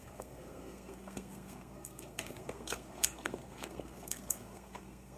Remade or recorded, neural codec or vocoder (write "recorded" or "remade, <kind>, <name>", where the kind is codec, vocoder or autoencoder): remade, codec, SNAC